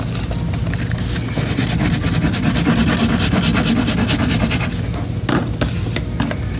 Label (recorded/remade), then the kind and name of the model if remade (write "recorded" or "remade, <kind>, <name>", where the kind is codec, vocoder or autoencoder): recorded